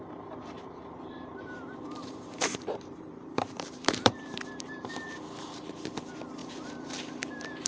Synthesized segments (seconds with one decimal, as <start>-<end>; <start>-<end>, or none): 0.6-5.2; 6.4-7.7